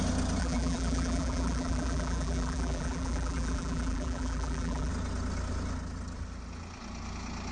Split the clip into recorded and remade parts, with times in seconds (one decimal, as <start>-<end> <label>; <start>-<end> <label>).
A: 0.0-0.4 recorded; 0.4-4.9 remade; 4.9-7.5 recorded